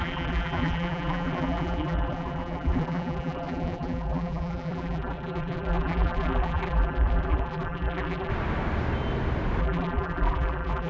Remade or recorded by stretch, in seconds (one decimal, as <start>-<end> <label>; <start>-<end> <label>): 0.0-8.3 remade; 8.3-9.6 recorded; 9.6-10.9 remade